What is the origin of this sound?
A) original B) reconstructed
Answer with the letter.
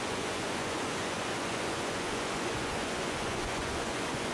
B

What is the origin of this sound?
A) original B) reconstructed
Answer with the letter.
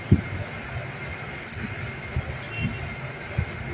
A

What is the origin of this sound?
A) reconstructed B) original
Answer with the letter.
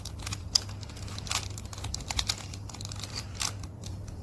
A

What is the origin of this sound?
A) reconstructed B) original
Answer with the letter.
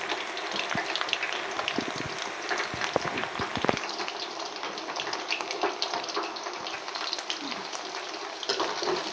B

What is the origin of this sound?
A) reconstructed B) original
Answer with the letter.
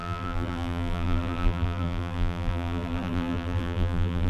A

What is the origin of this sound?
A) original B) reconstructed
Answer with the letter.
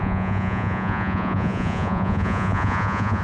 B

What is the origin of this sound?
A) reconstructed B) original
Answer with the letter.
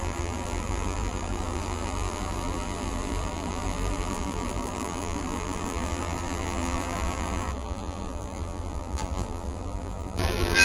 A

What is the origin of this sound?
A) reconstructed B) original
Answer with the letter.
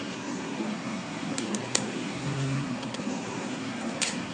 A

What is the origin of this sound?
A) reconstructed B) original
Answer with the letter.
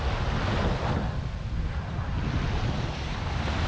B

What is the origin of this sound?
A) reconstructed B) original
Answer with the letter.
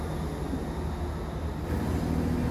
B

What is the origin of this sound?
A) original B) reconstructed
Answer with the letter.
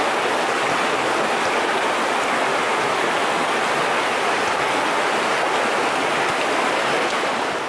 A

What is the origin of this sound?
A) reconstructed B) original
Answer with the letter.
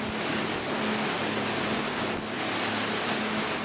B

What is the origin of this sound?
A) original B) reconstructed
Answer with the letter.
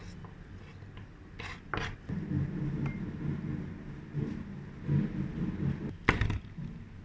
A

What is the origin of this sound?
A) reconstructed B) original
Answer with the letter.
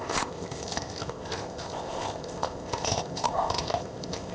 A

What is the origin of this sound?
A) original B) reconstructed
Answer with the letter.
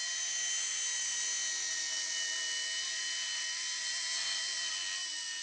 A